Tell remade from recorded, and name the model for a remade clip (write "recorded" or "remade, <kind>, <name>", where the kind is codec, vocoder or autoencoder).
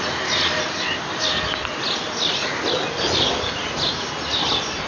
recorded